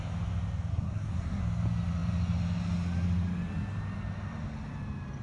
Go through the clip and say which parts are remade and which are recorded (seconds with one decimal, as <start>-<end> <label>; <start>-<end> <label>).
0.0-0.7 recorded; 0.7-1.4 remade; 1.4-5.2 recorded